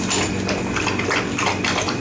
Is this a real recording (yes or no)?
yes